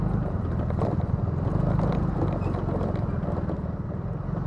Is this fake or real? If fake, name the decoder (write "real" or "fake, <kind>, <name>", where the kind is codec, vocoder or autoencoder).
real